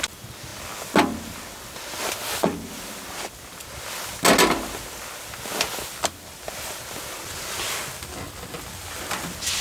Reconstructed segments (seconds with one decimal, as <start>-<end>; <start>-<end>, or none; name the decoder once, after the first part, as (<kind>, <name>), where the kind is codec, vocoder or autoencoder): none